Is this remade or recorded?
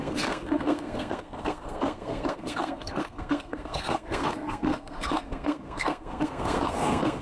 remade